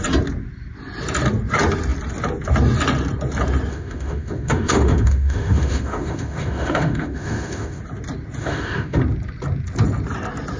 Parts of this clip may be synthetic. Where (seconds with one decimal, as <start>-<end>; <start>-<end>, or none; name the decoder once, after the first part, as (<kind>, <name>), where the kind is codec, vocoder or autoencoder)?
3.7-7.8 (autoencoder, DAC-VAE); 8.4-9.0